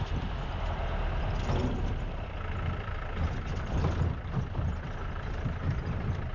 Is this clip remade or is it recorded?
recorded